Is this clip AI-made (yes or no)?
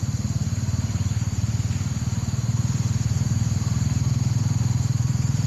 no